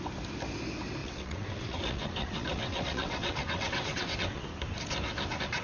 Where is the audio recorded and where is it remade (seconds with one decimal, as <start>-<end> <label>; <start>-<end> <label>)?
0.0-1.0 recorded; 1.0-4.4 remade; 4.4-5.6 recorded